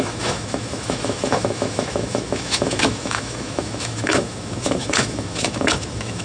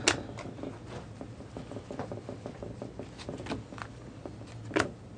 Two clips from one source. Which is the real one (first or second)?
second